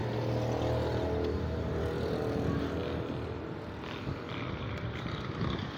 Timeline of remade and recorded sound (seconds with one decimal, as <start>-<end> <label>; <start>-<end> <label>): 0.0-5.8 recorded